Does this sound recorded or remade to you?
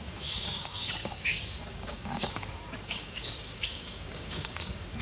remade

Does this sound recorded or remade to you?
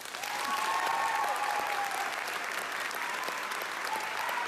recorded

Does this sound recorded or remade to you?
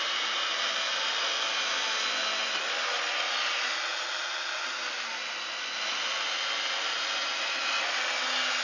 recorded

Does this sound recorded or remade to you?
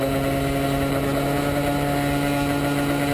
recorded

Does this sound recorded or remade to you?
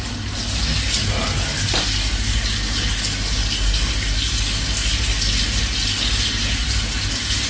recorded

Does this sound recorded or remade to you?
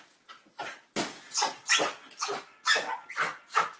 recorded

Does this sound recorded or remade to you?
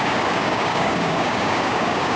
remade